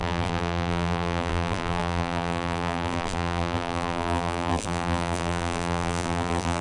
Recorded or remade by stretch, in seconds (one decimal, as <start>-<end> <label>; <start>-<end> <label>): 0.0-6.6 remade